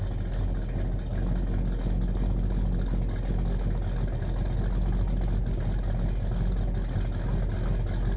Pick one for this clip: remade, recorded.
recorded